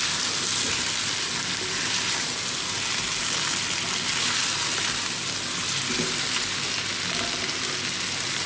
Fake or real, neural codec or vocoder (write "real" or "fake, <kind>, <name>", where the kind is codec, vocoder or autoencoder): real